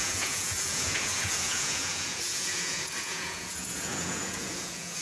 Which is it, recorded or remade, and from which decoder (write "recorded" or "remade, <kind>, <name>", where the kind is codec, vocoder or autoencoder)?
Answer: remade, vocoder, Vocos